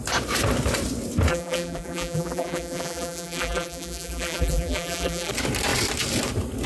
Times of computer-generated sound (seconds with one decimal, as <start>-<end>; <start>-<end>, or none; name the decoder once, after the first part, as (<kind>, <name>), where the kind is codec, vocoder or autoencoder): 1.3-5.3 (vocoder, BigVGAN v2)